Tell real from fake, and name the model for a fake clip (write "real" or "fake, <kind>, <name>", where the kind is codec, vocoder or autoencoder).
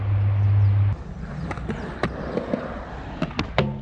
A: real